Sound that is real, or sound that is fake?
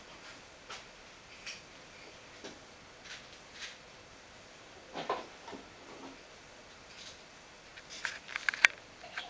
real